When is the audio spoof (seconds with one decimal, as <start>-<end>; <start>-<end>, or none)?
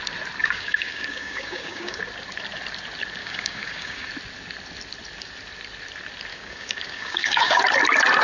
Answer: 0.4-2.0; 3.2-4.1; 6.3-7.6